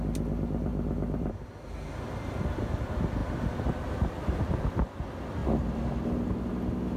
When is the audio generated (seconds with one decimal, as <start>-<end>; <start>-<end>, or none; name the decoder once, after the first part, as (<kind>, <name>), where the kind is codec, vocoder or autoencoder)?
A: 0.7-1.3 (vocoder, BigVGAN v2); 3.2-4.5